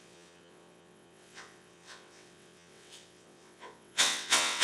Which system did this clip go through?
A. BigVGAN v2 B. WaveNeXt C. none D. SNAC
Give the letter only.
B